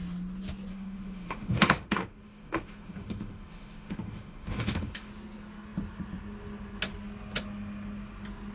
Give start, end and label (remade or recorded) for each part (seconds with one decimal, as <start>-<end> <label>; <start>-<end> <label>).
0.0-0.7 recorded; 0.7-5.1 remade; 5.1-8.5 recorded

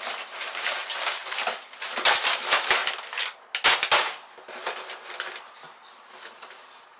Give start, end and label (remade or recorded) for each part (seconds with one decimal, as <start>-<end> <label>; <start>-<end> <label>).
0.0-1.2 remade; 1.2-2.1 recorded; 2.1-2.8 remade; 2.8-7.0 recorded

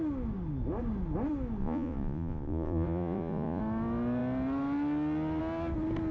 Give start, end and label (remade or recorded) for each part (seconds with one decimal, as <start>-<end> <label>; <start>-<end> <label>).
0.0-1.6 recorded; 1.6-3.6 remade; 3.6-6.1 recorded